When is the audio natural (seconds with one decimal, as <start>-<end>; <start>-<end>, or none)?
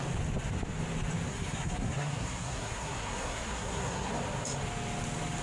0.0-1.3; 4.1-5.4